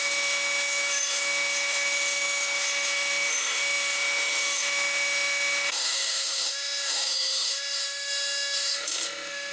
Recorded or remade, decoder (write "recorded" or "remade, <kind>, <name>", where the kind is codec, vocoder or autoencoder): remade, autoencoder, DAC-VAE